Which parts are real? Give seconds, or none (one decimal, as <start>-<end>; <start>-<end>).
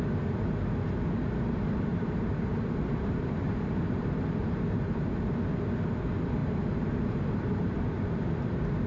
0.0-1.9; 5.4-6.4; 8.3-8.9